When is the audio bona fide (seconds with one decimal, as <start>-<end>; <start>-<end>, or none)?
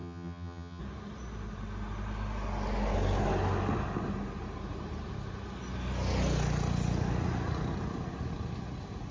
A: 0.8-9.1